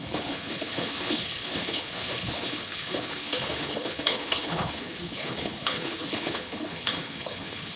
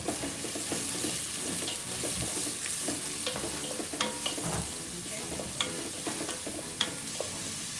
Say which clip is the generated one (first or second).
first